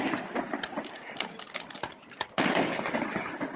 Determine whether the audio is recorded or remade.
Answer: recorded